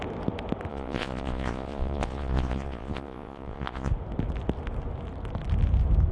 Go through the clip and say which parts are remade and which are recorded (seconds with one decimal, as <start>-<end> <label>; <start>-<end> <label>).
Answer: 0.0-0.7 recorded; 0.7-3.9 remade; 3.9-6.1 recorded